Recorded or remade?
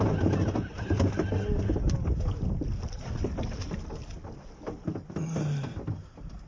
recorded